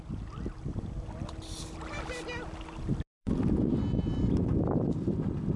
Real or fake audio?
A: real